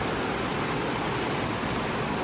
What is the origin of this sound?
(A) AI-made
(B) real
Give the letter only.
B